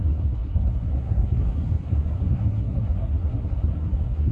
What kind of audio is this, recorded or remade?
remade